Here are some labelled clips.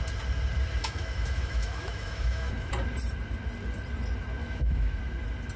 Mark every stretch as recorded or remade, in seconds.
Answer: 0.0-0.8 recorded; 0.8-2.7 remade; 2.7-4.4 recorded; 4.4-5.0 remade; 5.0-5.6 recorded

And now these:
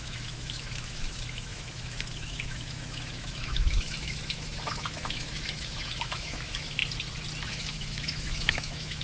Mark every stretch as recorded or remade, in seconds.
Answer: 0.0-6.8 remade; 6.8-7.5 recorded; 7.5-9.0 remade

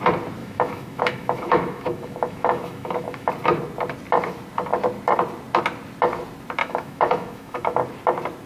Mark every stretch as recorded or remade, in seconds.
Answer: 0.0-0.4 recorded; 0.4-3.3 remade; 3.3-6.6 recorded; 6.6-7.8 remade; 7.8-8.5 recorded

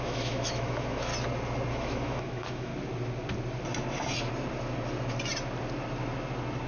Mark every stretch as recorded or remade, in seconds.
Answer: 0.0-1.1 remade; 1.1-1.7 recorded; 1.7-2.7 remade; 2.7-6.7 recorded

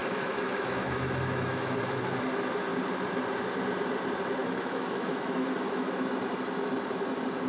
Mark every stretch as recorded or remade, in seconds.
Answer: 0.0-2.2 remade; 2.2-4.4 recorded; 4.4-5.8 remade; 5.8-7.5 recorded

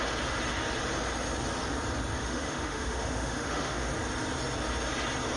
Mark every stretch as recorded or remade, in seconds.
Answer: 0.0-2.2 recorded; 2.2-3.9 remade; 3.9-5.4 recorded

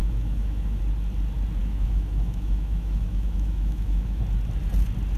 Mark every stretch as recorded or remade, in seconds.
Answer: 0.0-0.8 remade; 0.8-1.6 recorded; 1.6-4.2 remade; 4.2-5.2 recorded

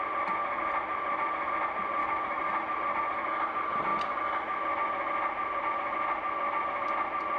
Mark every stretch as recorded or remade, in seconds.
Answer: 0.0-2.0 recorded; 2.0-2.8 remade; 2.8-7.4 recorded